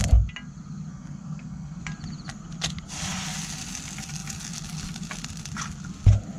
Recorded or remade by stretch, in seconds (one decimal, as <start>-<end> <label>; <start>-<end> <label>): 0.0-0.9 recorded; 0.9-1.8 remade; 1.8-6.4 recorded